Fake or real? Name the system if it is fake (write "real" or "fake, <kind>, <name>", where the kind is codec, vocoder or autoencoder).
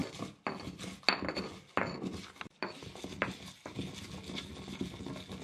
real